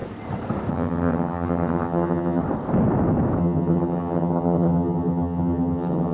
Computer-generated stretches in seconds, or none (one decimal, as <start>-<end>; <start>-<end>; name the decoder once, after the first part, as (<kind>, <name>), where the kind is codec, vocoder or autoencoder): 0.7-2.4 (vocoder, HiFi-GAN); 3.4-6.1